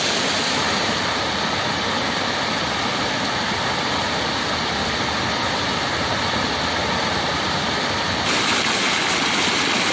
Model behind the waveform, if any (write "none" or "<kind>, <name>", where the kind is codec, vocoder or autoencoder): none